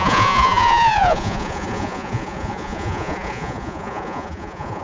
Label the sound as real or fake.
fake